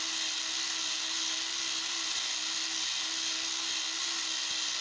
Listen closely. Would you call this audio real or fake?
real